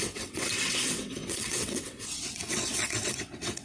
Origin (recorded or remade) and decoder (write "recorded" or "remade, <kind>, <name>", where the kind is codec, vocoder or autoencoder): remade, vocoder, WaveNeXt